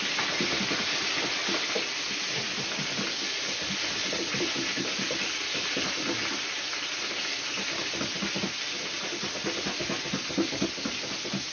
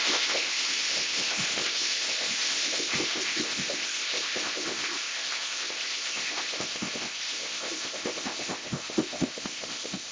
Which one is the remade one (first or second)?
second